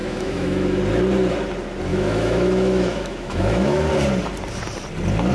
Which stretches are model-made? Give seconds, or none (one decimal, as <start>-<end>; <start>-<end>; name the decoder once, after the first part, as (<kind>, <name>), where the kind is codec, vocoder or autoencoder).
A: 0.0-0.8 (autoencoder, DAC-VAE); 1.9-3.9